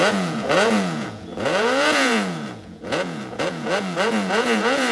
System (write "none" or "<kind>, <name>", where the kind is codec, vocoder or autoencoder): vocoder, Vocos